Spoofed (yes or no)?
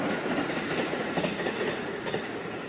yes